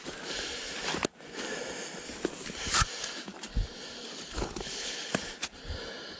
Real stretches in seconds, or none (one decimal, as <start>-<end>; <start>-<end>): 0.0-4.0; 5.1-6.2

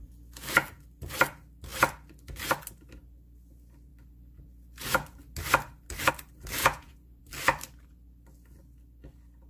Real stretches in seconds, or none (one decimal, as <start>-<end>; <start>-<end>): 0.0-6.6; 7.2-9.5

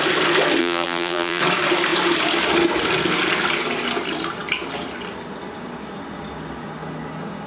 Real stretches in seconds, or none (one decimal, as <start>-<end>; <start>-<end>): 0.0-0.6; 1.4-7.5

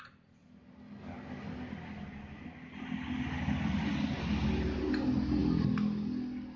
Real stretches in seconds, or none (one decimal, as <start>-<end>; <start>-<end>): 0.0-6.6

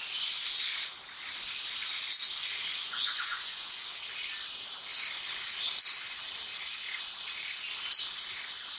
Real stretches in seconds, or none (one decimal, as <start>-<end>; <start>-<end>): 0.0-2.7; 3.9-8.8

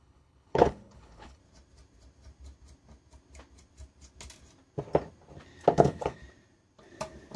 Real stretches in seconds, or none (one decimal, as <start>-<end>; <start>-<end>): 1.4-5.7; 6.2-7.4

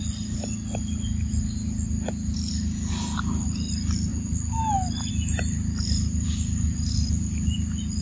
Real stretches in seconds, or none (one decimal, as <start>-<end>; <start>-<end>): 0.0-8.0